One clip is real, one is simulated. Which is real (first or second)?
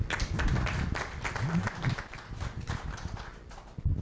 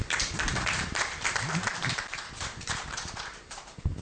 first